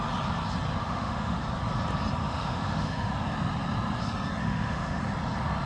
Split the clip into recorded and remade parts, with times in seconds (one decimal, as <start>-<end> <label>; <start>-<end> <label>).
0.0-0.8 recorded; 0.8-1.4 remade; 1.4-2.2 recorded; 2.2-3.1 remade; 3.1-4.4 recorded; 4.4-5.0 remade; 5.0-5.7 recorded